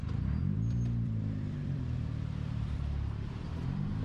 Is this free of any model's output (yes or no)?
no